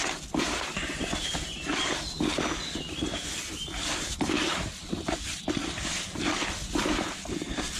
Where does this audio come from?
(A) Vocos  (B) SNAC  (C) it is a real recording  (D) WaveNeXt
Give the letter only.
C